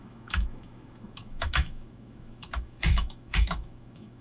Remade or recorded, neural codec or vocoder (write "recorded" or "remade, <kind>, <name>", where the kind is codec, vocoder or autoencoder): remade, autoencoder, DAC-VAE